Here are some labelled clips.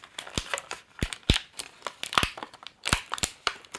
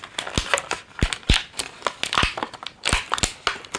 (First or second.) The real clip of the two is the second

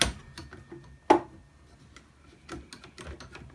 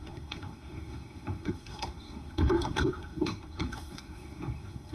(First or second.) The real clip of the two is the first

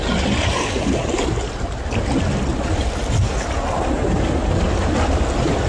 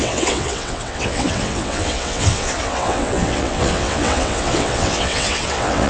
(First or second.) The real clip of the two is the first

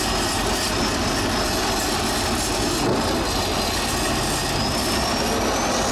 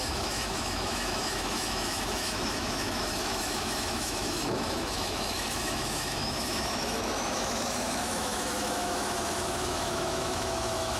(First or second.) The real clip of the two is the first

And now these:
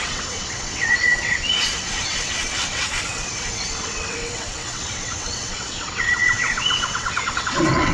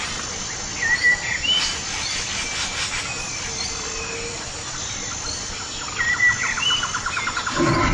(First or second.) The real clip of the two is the second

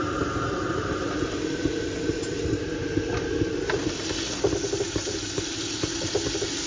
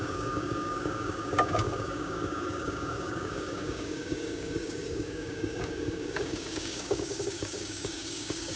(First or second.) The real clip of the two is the first